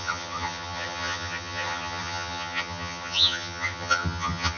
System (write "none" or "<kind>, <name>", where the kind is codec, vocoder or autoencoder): vocoder, HiFi-GAN